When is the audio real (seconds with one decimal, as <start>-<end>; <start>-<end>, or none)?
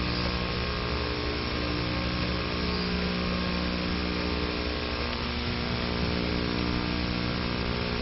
0.0-8.0